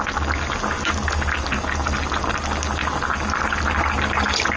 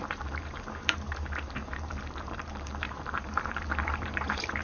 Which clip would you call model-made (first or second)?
second